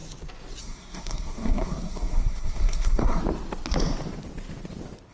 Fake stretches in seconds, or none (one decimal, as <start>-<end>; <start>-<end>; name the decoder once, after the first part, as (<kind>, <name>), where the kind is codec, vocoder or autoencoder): 0.6-3.2 (codec, SNAC)